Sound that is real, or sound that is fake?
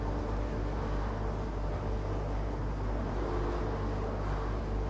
real